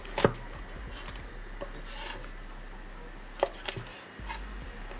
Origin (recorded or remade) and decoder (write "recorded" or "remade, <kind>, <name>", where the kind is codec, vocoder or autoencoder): recorded